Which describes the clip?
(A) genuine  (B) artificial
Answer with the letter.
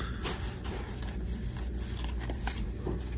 A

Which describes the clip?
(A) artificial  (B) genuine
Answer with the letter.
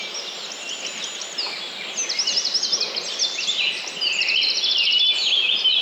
B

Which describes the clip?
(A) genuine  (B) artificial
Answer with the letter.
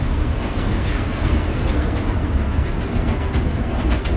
B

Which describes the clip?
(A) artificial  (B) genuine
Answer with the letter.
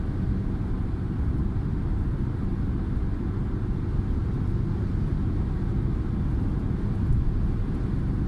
B